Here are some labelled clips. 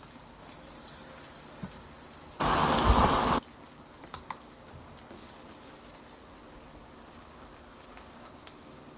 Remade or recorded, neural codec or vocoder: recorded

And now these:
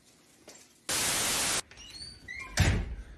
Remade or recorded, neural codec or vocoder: recorded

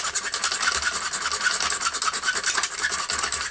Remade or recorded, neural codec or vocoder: recorded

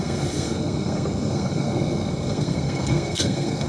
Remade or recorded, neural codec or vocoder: remade, codec, SNAC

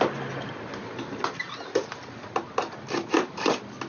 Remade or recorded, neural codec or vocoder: recorded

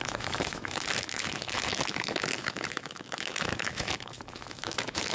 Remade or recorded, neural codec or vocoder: remade, autoencoder, DAC-VAE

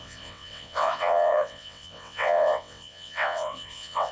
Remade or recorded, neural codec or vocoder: remade, vocoder, WaveNeXt